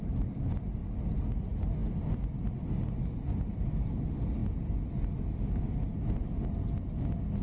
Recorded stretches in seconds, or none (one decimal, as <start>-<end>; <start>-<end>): 0.0-7.4